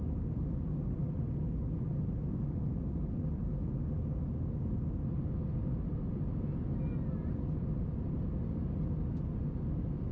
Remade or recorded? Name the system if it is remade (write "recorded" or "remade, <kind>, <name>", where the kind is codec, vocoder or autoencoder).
recorded